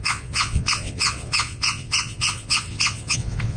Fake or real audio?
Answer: fake